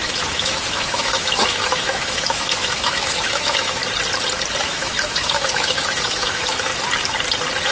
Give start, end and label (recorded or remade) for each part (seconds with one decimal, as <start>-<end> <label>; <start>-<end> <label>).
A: 0.0-3.8 remade; 3.8-4.6 recorded; 4.6-6.7 remade; 6.7-7.7 recorded